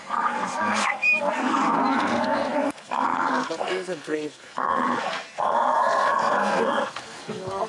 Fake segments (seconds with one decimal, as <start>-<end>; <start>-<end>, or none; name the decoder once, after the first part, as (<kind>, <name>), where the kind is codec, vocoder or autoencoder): 0.0-7.7 (codec, SNAC)

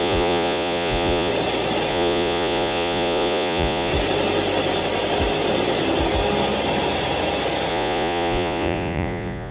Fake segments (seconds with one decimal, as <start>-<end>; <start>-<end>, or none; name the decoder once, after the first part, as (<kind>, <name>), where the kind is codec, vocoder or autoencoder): 0.0-1.3 (vocoder, Vocos); 1.9-3.9; 7.7-9.5

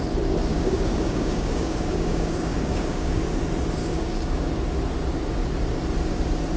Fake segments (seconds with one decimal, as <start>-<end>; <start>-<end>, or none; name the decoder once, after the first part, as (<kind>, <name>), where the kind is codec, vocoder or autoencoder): 0.5-3.2 (codec, DAC); 3.8-4.5

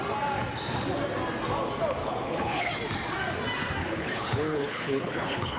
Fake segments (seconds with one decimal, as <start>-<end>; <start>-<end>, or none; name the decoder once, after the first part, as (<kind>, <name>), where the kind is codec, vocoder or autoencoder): 2.0-2.7 (codec, HILCodec); 3.8-5.6